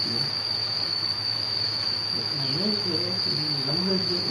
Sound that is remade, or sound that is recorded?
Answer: remade